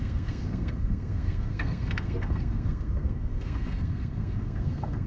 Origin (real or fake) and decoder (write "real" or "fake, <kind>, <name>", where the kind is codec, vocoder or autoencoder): fake, codec, SNAC